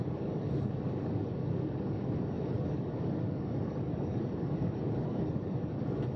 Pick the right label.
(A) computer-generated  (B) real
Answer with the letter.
A